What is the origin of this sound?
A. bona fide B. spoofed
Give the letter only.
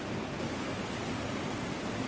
A